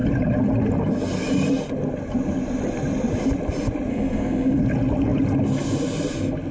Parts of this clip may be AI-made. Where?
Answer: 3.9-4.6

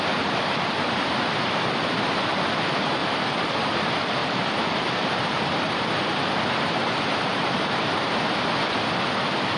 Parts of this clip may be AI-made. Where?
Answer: 3.0-3.7; 4.2-8.0

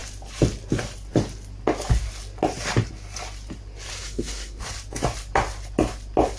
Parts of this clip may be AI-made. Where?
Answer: 3.9-4.6

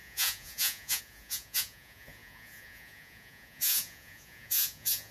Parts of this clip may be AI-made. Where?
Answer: 0.0-5.1

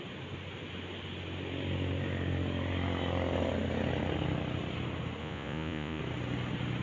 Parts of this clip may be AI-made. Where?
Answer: 5.2-6.0

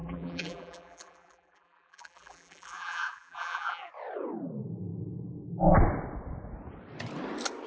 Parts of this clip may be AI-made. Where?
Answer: 0.0-3.9

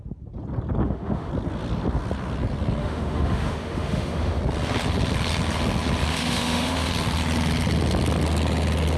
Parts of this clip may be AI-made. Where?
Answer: 0.8-1.3; 2.8-4.4; 6.1-6.9

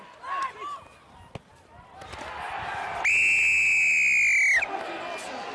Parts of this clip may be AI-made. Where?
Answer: none